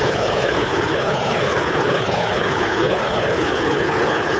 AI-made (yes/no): yes